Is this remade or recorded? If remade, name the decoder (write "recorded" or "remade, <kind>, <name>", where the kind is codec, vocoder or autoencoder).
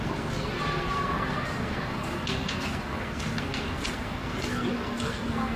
remade, codec, SNAC